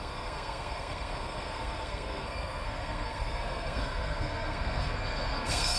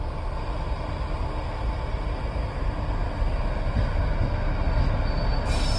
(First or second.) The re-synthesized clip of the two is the first